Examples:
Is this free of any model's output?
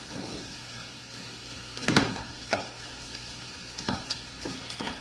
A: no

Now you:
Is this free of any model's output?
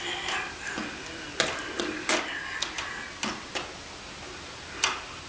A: yes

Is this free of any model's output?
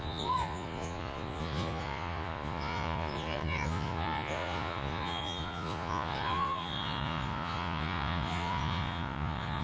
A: no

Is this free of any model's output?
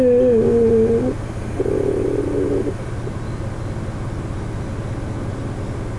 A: yes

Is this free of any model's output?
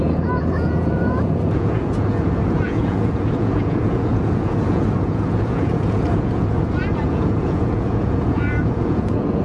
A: no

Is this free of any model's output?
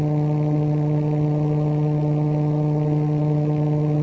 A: yes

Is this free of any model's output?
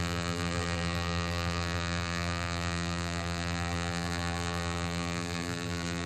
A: no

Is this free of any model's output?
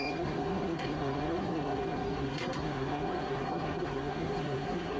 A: no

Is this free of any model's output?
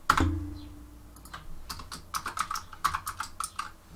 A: yes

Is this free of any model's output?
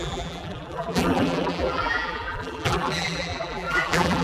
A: no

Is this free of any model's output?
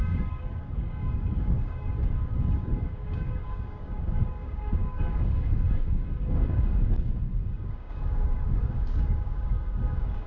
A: no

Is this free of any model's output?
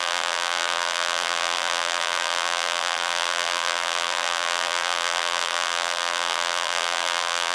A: no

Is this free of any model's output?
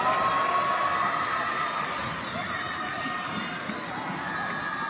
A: yes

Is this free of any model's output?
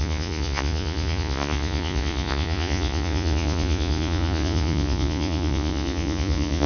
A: no